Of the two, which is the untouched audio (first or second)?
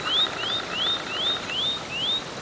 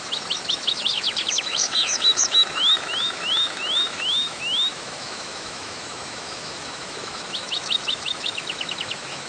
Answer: first